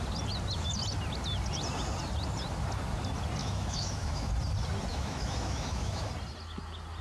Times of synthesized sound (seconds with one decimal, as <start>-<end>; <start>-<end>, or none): 3.4-4.3; 4.9-6.1